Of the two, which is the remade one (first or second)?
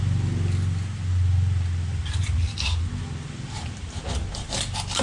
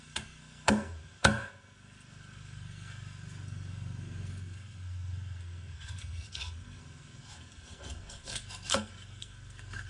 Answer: second